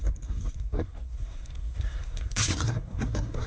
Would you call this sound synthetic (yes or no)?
yes